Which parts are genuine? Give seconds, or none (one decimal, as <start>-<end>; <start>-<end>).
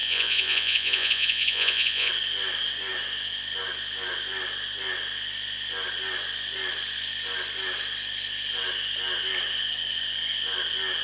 2.1-11.0